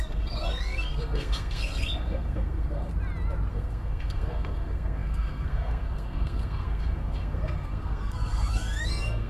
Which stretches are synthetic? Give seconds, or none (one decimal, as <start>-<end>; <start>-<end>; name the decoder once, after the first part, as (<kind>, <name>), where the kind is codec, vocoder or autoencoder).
0.0-2.9 (codec, SNAC); 3.5-9.3